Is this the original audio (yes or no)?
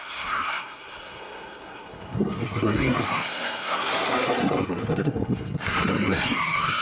no